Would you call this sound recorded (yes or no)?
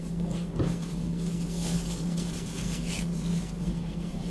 no